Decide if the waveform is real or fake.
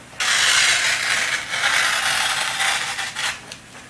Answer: real